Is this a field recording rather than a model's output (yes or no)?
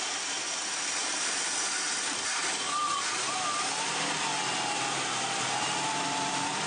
no